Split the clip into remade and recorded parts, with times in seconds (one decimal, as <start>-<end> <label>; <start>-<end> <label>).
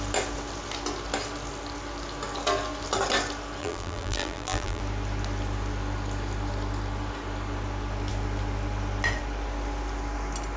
0.0-3.6 recorded; 3.6-4.8 remade; 4.8-10.6 recorded